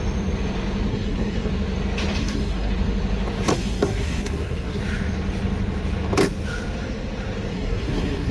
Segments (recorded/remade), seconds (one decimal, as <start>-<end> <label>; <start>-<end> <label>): 0.0-0.9 recorded; 0.9-1.5 remade; 1.5-2.2 recorded; 2.2-2.7 remade; 2.7-3.5 recorded; 3.5-4.8 remade; 4.8-7.5 recorded; 7.5-8.3 remade